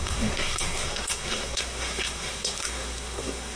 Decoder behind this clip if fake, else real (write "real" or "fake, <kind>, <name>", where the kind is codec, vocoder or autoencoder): fake, codec, SNAC